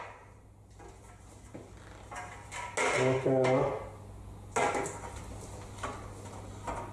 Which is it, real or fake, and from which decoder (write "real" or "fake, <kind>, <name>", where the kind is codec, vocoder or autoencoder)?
real